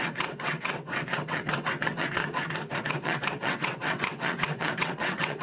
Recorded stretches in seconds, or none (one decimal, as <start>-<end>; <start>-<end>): 2.2-2.8